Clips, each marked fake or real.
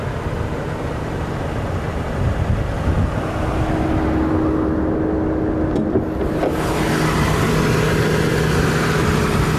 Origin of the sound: real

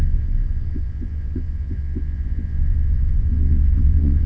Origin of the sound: fake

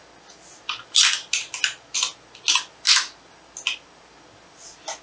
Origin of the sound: real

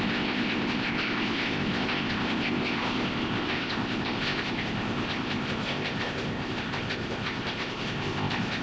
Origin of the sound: fake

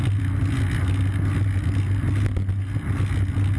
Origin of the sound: real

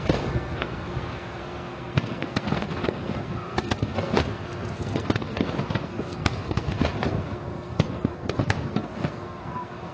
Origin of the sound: fake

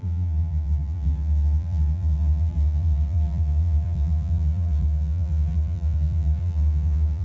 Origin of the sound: fake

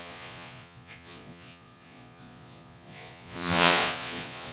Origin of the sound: fake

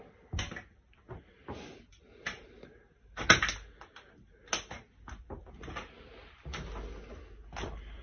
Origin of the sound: real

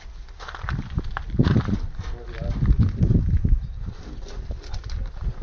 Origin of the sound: real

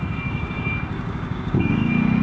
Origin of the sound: fake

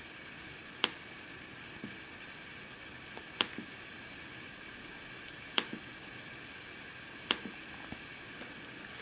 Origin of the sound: real